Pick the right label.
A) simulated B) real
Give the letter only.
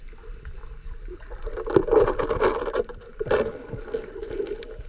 B